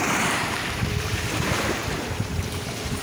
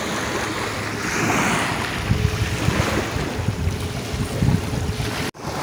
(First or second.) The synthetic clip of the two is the first